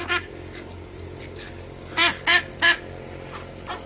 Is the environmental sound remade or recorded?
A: recorded